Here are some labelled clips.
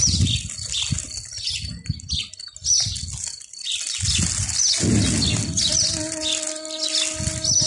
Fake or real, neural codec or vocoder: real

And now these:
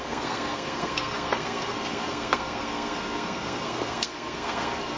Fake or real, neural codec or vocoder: fake, codec, SNAC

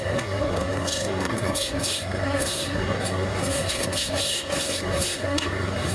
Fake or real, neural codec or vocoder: fake, codec, SNAC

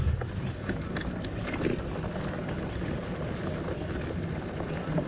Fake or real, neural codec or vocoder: real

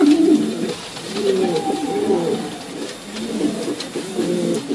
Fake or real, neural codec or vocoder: real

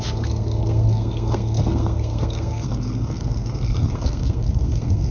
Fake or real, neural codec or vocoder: fake, codec, SNAC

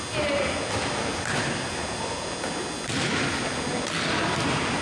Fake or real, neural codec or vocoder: real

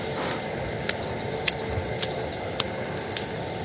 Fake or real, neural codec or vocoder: real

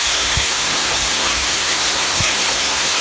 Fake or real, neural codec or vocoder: fake, codec, SNAC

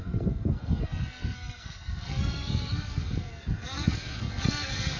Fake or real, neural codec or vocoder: fake, codec, SNAC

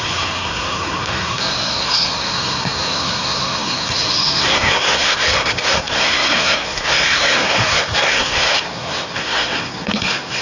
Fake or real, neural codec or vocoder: fake, codec, SNAC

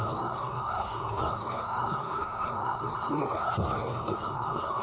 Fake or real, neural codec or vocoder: fake, codec, SNAC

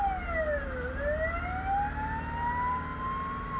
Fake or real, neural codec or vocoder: real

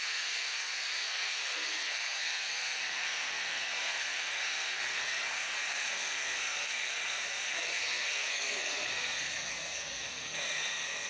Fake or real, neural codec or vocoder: fake, codec, SNAC